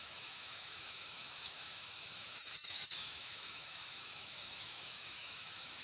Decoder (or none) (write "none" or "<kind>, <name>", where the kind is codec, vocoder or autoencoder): autoencoder, DAC-VAE